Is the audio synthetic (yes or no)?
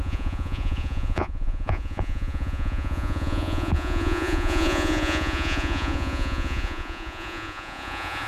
yes